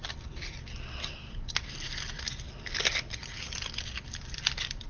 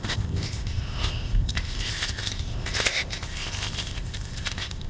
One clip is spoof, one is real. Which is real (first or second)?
first